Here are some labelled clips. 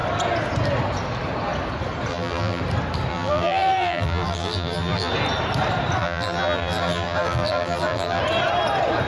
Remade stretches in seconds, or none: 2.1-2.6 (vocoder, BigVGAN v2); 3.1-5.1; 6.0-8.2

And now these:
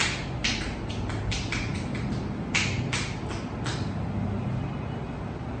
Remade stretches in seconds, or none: none

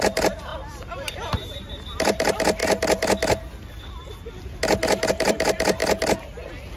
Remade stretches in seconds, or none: 0.0-2.6 (vocoder, BigVGAN v2); 5.1-5.8

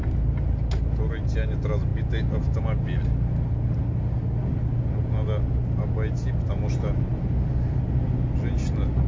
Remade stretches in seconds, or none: none

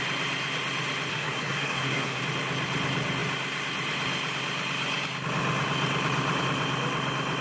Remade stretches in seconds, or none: 1.1-2.2 (codec, SNAC)